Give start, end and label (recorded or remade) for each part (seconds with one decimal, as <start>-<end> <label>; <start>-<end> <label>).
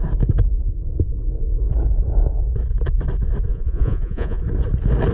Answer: 0.0-3.5 recorded; 3.5-4.4 remade; 4.4-5.1 recorded